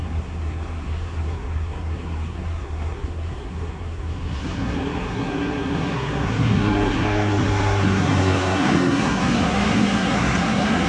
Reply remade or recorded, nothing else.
remade